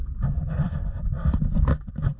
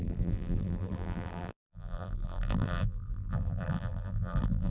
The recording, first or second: first